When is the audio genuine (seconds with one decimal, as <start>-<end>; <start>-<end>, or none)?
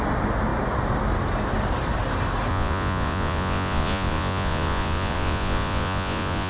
0.0-2.5